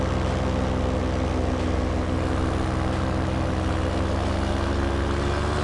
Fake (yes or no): no